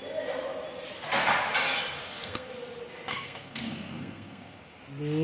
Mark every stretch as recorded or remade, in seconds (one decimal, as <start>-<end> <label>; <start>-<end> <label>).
0.0-2.0 recorded; 2.0-2.5 remade; 2.5-3.1 recorded; 3.1-4.8 remade; 4.8-5.2 recorded